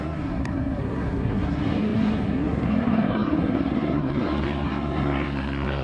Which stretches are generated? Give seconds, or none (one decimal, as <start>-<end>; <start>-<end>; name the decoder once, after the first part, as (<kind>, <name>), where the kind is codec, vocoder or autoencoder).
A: 0.0-5.8 (codec, SNAC)